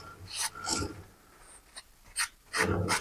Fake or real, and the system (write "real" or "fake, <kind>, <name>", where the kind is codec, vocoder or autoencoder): real